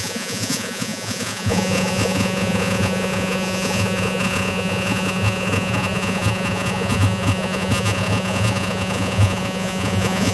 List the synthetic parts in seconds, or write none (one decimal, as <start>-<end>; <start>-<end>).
0.0-10.3